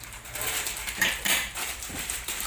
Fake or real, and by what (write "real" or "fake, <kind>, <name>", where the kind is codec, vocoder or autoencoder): fake, vocoder, BigVGAN v2